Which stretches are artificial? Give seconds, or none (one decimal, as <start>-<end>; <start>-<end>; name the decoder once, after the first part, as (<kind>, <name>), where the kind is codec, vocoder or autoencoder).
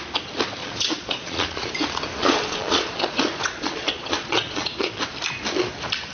0.6-1.7 (vocoder, Vocos); 2.2-4.9